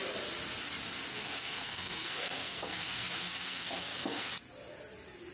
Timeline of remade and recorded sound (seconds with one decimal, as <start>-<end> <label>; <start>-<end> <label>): 0.0-1.1 recorded; 1.1-4.3 remade; 4.3-5.3 recorded